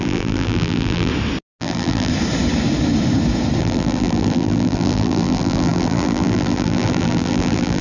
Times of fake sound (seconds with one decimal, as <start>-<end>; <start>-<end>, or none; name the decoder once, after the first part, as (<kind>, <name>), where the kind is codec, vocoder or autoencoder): 0.0-1.1 (vocoder, BigVGAN v2); 1.6-2.1; 3.6-7.8